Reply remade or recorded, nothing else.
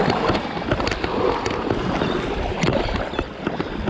recorded